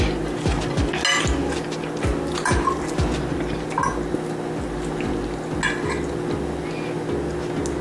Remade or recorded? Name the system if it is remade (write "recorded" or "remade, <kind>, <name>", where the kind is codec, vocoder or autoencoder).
recorded